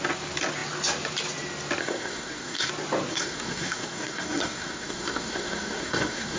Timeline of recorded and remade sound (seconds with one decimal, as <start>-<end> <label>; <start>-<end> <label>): 0.0-1.8 recorded; 1.8-2.7 remade; 2.7-3.1 recorded; 3.1-6.4 remade